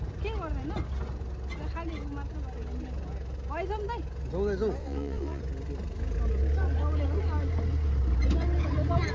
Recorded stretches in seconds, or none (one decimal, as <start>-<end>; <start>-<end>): 0.0-4.8; 5.4-9.1